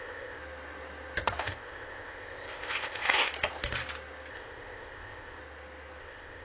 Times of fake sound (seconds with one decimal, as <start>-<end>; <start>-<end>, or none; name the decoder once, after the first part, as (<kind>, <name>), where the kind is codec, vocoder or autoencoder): 0.0-0.4 (codec, ZipCodec); 1.4-3.3; 4.3-5.4; 6.0-6.4